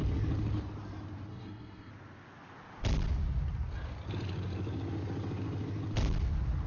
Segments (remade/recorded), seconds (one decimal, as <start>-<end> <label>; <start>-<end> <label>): 0.0-1.3 recorded; 1.3-1.9 remade; 1.9-6.7 recorded

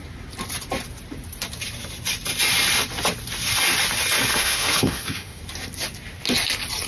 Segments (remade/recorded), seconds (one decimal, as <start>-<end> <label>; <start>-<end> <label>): 0.0-4.3 recorded; 4.3-5.4 remade; 5.4-6.9 recorded

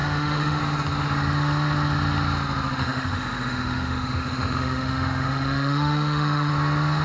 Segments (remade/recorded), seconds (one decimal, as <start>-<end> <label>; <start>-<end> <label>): 0.0-0.6 remade; 0.6-2.8 recorded; 2.8-6.5 remade; 6.5-7.0 recorded

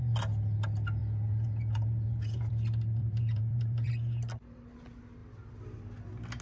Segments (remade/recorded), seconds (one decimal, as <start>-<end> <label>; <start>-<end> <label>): 0.0-1.0 recorded; 1.0-2.5 remade; 2.5-3.0 recorded; 3.0-3.9 remade; 3.9-6.4 recorded